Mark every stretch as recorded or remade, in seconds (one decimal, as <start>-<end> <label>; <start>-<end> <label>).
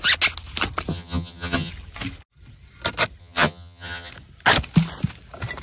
0.0-0.9 recorded; 0.9-1.7 remade; 1.7-3.2 recorded; 3.2-4.1 remade; 4.1-5.6 recorded